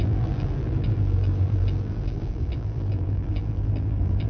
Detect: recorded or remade remade